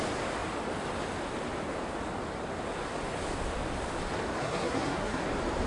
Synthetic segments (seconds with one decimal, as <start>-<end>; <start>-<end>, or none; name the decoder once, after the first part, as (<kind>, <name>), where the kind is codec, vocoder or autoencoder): 4.4-5.2 (codec, SNAC)